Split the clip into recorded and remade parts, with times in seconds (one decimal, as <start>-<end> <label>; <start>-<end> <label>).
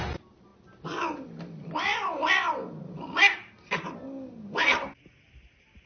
0.0-5.9 recorded